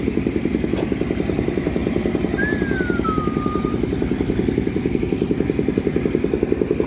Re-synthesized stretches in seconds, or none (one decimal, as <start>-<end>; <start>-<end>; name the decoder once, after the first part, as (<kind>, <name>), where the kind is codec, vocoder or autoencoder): none